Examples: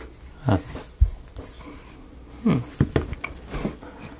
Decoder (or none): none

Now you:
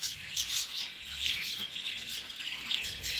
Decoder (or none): codec, SNAC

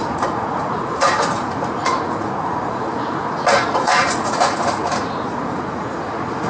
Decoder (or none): vocoder, Vocos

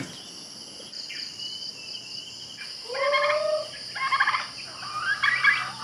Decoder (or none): none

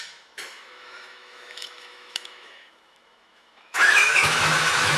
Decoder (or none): autoencoder, DAC-VAE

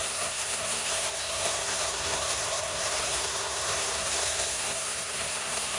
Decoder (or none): codec, SNAC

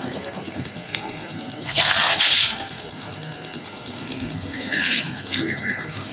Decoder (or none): codec, SNAC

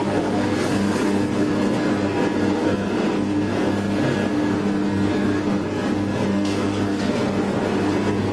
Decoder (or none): codec, SNAC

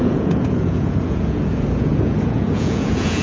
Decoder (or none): vocoder, Vocos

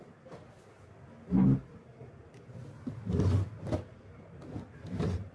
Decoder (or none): none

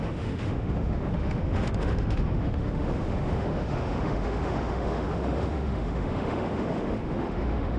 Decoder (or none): autoencoder, DAC-VAE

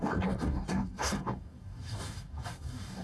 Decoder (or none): codec, DAC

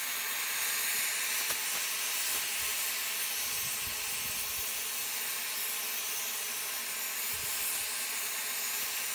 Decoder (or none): none